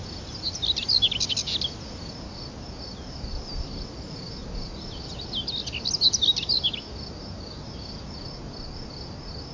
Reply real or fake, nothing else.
real